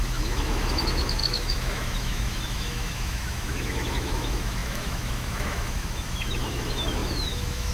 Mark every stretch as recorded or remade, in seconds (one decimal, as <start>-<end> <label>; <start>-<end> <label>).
0.0-7.7 remade